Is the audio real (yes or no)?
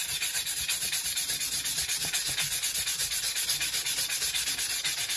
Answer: yes